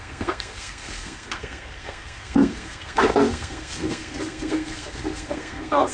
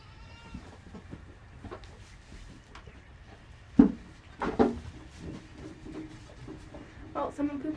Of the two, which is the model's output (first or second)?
first